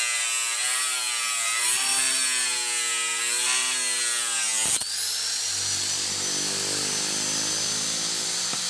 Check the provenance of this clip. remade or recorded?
recorded